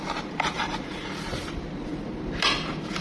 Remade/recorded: recorded